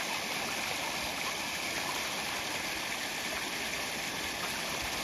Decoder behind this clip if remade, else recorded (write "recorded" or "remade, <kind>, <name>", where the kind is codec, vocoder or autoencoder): recorded